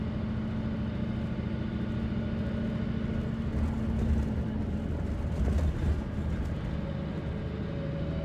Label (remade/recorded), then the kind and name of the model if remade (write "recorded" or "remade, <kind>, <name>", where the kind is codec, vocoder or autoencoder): recorded